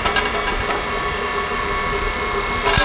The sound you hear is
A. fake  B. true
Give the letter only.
B